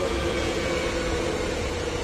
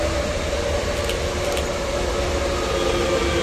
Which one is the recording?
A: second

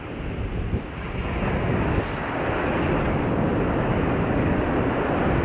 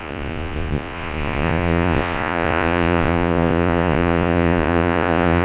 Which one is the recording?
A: first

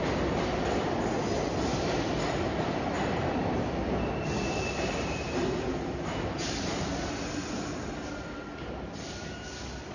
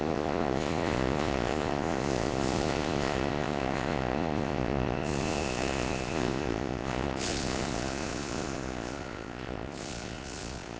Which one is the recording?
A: first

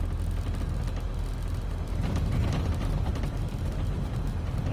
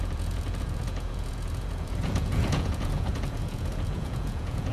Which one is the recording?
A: first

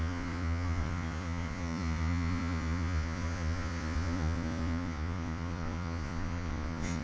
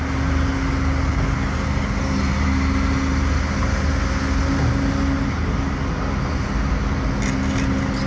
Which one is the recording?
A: second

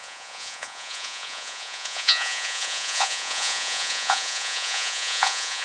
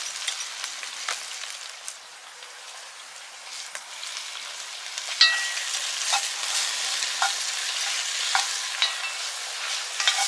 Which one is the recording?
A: second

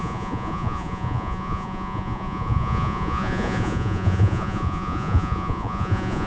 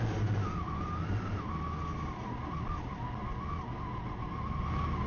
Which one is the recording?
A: second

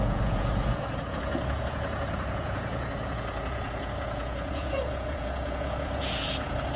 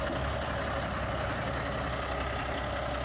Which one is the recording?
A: second